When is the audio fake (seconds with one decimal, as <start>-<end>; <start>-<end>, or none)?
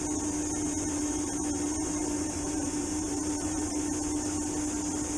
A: 0.6-3.7